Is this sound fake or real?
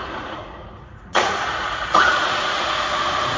fake